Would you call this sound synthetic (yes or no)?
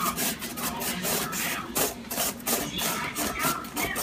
no